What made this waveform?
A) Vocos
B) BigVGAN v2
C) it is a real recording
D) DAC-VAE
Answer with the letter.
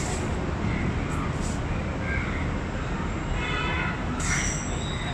C